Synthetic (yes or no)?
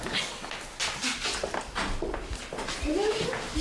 no